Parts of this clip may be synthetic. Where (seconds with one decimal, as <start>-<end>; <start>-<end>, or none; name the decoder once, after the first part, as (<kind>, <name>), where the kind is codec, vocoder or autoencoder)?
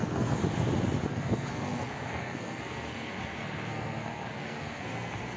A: 0.0-0.4 (codec, SNAC); 1.1-5.4